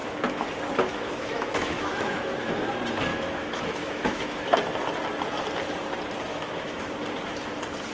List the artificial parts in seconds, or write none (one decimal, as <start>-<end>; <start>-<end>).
0.0-0.5; 0.9-2.7; 3.1-4.4; 6.3-6.9